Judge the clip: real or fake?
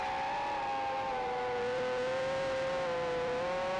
real